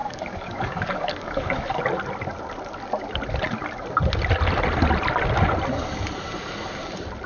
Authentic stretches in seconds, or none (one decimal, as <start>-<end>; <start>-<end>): 1.8-7.3